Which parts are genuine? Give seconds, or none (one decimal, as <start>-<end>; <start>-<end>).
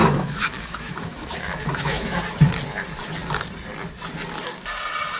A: 2.2-5.2